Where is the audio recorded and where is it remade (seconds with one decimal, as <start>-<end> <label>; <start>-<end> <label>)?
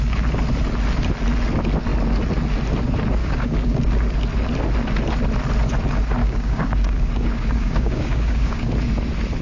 0.0-3.2 recorded; 3.2-3.9 remade; 3.9-6.2 recorded; 6.2-8.7 remade; 8.7-9.4 recorded